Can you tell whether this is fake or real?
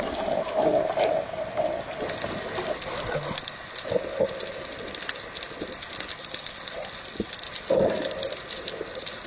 real